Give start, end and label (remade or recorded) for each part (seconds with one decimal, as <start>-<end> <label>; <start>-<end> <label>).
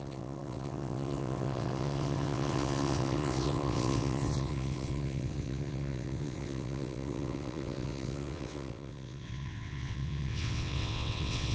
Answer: 0.0-11.5 remade